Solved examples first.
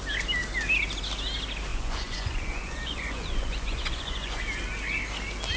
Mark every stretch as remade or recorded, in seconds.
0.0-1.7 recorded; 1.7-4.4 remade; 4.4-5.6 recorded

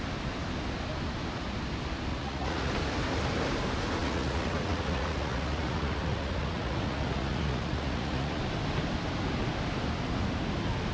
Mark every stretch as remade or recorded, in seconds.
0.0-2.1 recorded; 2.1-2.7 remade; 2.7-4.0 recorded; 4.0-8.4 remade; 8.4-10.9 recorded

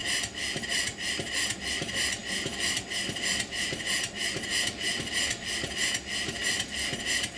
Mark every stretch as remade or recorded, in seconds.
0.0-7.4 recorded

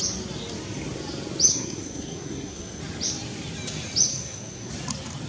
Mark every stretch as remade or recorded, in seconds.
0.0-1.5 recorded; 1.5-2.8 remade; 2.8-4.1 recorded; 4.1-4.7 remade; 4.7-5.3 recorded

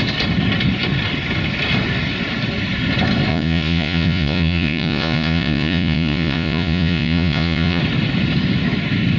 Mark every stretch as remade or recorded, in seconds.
0.0-3.3 recorded; 3.3-7.8 remade; 7.8-9.2 recorded

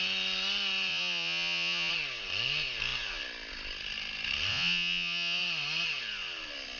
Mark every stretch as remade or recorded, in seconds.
0.0-0.9 recorded; 0.9-1.9 remade; 1.9-4.5 recorded; 4.5-5.4 remade; 5.4-6.8 recorded

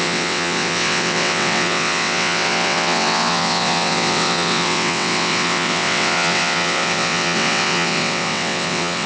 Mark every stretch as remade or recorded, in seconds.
0.0-9.1 remade

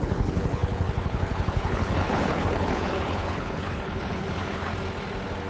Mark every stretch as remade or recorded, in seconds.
0.0-4.7 remade; 4.7-5.5 recorded